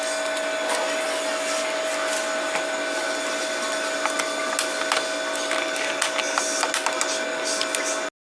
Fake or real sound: real